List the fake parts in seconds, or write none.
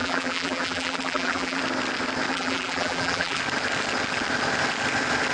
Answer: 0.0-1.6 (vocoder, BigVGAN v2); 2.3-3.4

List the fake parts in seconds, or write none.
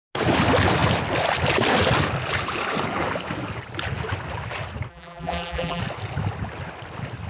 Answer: 4.9-5.8 (vocoder, BigVGAN v2)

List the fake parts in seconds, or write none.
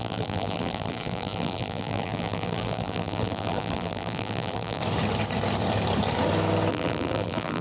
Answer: 0.0-4.8 (vocoder, BigVGAN v2); 6.7-7.6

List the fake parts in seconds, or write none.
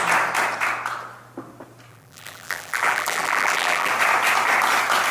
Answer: 1.9-3.9 (vocoder, BigVGAN v2)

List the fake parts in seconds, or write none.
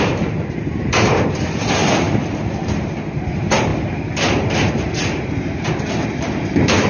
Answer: 0.0-1.8 (vocoder, BigVGAN v2); 2.5-6.9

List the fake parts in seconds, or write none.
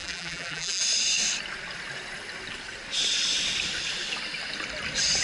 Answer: 0.0-0.8 (vocoder, BigVGAN v2)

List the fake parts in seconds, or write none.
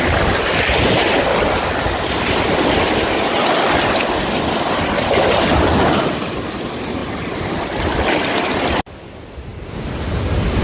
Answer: 7.0-7.5 (vocoder, BigVGAN v2)